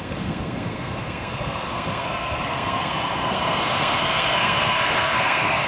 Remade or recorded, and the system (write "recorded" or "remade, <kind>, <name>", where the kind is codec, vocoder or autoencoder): remade, codec, SNAC